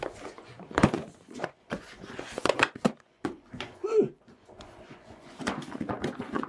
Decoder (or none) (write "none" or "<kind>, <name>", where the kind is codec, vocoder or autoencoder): vocoder, Vocos